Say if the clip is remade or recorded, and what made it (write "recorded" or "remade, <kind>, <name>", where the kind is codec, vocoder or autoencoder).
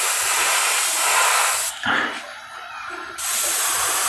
recorded